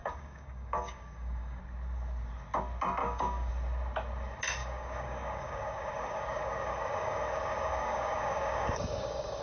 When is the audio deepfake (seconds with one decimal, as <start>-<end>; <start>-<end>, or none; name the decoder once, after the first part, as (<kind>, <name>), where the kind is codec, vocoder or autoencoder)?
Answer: 0.0-1.6 (codec, DAC); 3.0-3.5; 4.6-9.4

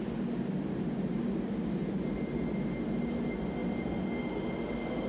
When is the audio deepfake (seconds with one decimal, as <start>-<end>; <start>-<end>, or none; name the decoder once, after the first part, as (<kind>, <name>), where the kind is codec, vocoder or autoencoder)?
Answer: none